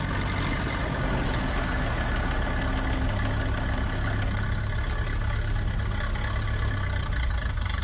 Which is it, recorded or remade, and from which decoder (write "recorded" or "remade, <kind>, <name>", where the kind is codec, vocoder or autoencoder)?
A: recorded